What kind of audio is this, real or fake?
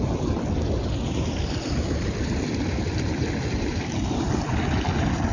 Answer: real